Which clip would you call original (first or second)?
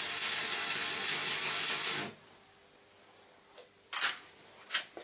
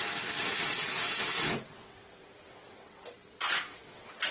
first